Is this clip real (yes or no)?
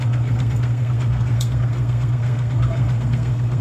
no